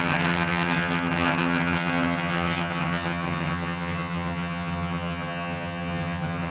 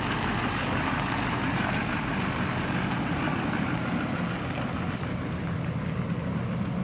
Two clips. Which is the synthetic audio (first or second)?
first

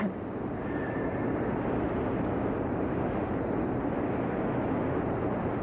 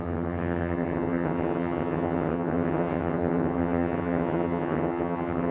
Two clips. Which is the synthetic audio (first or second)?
second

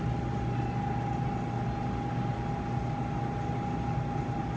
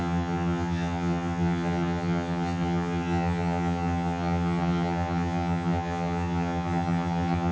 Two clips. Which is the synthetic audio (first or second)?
second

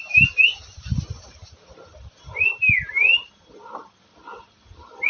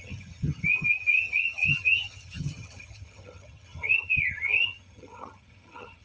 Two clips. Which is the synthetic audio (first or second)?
second